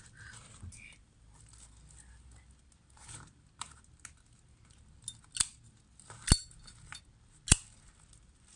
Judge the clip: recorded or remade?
recorded